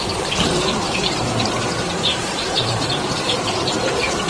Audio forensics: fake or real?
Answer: fake